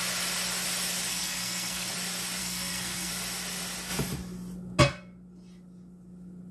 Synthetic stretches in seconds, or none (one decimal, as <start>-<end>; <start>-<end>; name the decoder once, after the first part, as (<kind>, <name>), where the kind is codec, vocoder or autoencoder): 1.1-1.9 (codec, SNAC); 2.4-3.1

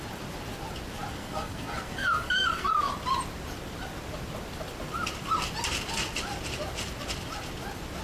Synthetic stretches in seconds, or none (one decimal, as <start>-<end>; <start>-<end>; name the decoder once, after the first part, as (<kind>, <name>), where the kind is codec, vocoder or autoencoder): 1.1-2.9 (codec, SNAC)

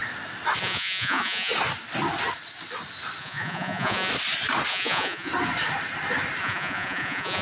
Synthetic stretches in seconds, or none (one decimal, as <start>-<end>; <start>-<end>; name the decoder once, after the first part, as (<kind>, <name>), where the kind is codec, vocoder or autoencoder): 0.6-1.5 (vocoder, Vocos); 3.2-4.1; 4.7-5.3; 6.4-7.4

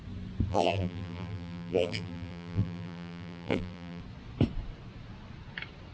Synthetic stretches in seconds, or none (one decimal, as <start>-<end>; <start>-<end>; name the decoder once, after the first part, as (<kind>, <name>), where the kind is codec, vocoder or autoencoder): 0.5-4.0 (vocoder, BigVGAN v2)

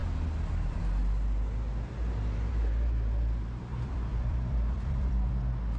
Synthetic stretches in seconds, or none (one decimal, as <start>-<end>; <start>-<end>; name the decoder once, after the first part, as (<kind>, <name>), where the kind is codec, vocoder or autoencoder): 0.0-0.8 (vocoder, BigVGAN v2); 3.7-5.3

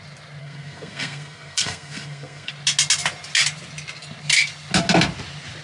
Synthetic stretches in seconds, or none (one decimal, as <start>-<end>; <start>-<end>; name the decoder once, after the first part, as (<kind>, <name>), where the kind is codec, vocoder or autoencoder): 0.4-2.5 (codec, SNAC)